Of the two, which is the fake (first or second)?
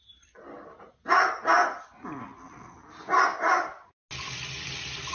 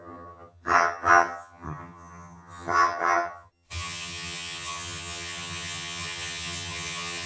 second